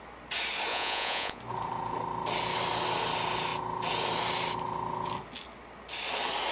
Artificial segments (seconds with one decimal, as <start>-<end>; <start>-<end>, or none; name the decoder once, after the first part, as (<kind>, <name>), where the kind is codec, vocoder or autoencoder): 0.7-1.4 (vocoder, Vocos)